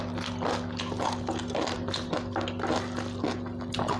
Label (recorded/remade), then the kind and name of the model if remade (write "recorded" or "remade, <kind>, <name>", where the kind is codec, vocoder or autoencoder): recorded